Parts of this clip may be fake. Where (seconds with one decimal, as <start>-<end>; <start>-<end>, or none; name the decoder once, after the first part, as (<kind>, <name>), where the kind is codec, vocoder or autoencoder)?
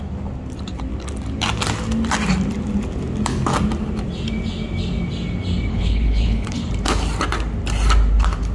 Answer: 5.7-6.7 (codec, HILCodec)